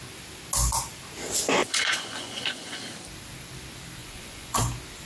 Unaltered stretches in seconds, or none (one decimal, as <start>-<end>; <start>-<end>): 0.0-1.6; 2.8-4.0; 4.6-5.1